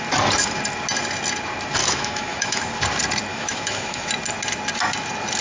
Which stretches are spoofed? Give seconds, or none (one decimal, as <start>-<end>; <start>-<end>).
1.8-2.6; 3.3-4.1